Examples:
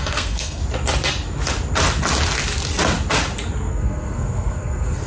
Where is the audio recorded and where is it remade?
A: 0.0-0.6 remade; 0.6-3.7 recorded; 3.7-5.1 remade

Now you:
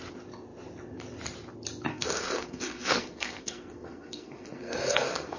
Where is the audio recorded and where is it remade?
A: 0.0-1.9 recorded; 1.9-5.4 remade

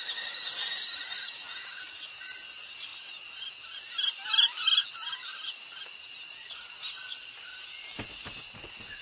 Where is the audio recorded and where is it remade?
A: 0.0-9.0 recorded

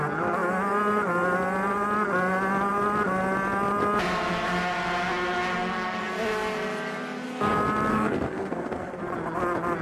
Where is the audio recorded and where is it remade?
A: 0.0-7.9 recorded; 7.9-9.0 remade; 9.0-9.8 recorded

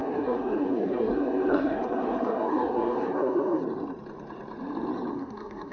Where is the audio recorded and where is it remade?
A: 0.0-3.6 remade; 3.6-5.1 recorded; 5.1-5.7 remade

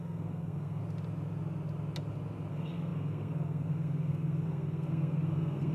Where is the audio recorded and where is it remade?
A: 0.0-0.8 remade; 0.8-2.5 recorded; 2.5-5.7 remade